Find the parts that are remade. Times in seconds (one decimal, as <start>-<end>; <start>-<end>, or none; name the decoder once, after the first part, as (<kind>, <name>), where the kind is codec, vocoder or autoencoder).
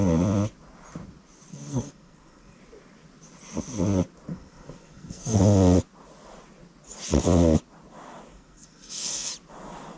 1.5-2.6 (codec, SNAC); 4.3-5.4; 8.3-9.3